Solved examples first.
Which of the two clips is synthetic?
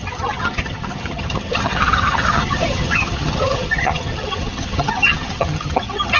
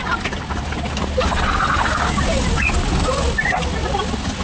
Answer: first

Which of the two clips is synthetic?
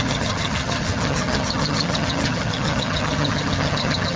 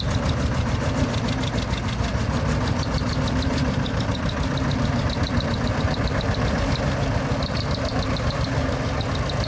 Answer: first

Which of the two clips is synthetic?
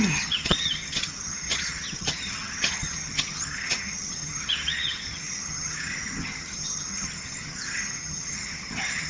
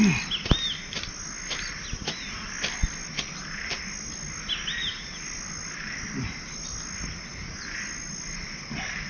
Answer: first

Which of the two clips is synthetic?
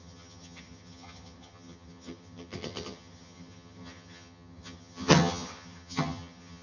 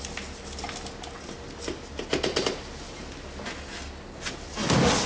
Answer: first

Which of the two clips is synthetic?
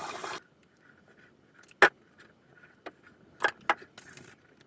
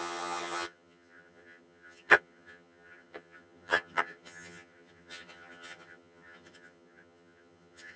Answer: second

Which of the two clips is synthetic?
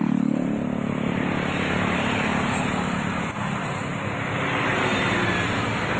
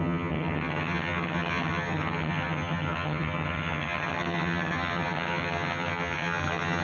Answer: second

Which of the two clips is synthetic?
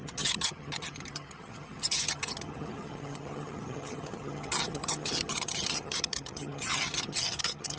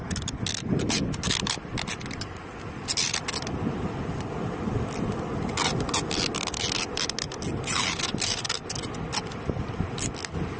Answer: first